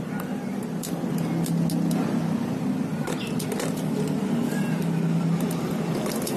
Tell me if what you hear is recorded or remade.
recorded